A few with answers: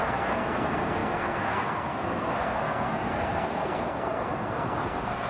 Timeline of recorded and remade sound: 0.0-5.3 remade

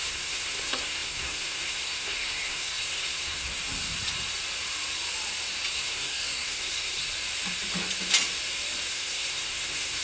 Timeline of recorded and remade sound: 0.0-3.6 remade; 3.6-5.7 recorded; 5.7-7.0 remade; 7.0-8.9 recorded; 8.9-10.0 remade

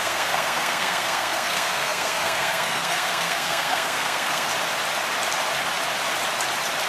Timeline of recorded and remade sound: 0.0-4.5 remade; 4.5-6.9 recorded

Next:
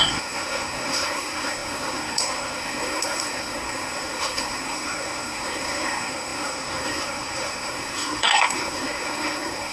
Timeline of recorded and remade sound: 0.0-9.7 remade

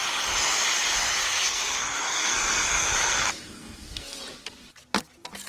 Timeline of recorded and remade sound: 0.0-1.2 recorded; 1.2-4.2 remade; 4.2-5.5 recorded

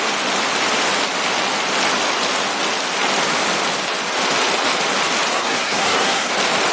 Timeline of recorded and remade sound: 0.0-5.3 recorded; 5.3-6.3 remade; 6.3-6.7 recorded

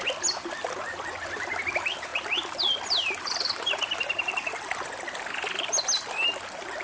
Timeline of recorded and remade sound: 0.0-6.8 recorded

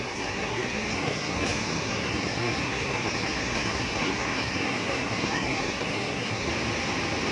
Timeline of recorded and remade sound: 0.0-6.5 remade; 6.5-7.3 recorded